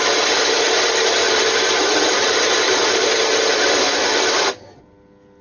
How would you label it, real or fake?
real